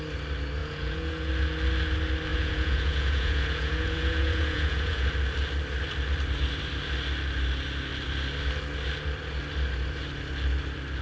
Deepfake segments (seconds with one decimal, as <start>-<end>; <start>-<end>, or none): 0.6-1.3; 2.3-5.1